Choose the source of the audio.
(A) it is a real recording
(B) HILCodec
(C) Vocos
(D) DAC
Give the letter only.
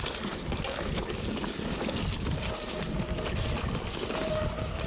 A